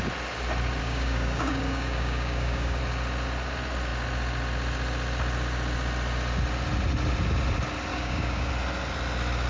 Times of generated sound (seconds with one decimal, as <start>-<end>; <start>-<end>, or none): 0.8-2.8; 7.9-8.5